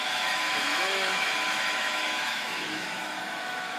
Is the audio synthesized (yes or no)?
yes